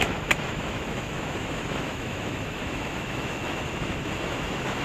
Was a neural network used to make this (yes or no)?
yes